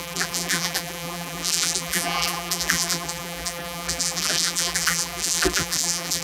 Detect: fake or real fake